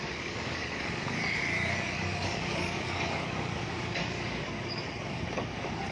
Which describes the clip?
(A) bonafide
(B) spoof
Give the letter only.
B